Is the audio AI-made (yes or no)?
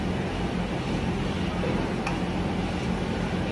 no